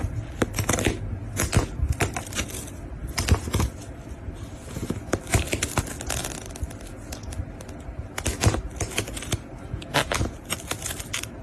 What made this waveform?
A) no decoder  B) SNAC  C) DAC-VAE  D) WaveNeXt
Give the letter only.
A